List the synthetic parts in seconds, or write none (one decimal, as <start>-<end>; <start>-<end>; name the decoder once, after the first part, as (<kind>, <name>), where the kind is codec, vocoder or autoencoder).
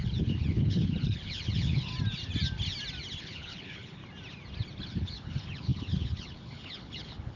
0.0-1.9 (codec, HILCodec); 3.2-4.0; 4.8-7.4